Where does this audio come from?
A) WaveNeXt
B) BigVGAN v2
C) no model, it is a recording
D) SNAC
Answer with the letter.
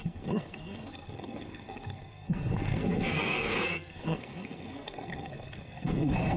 D